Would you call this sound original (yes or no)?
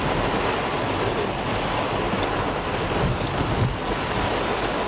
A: no